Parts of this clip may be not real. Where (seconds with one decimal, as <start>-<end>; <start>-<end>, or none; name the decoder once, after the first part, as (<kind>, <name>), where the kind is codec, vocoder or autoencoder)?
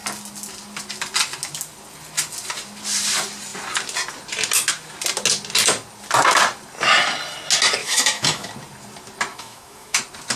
7.8-8.5 (autoencoder, DAC-VAE); 9.3-10.0